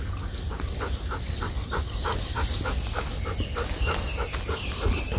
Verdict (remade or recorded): recorded